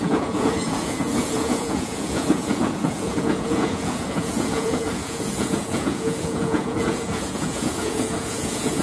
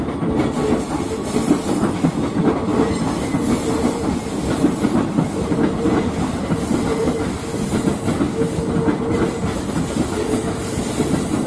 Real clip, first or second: second